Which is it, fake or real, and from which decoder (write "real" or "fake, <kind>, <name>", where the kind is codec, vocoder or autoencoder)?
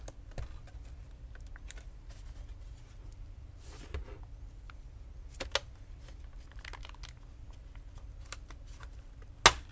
real